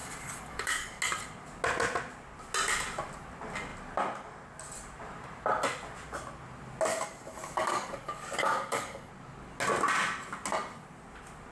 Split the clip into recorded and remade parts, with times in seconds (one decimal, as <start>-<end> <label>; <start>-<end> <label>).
0.0-1.0 remade; 1.0-6.9 recorded; 6.9-9.1 remade; 9.1-11.5 recorded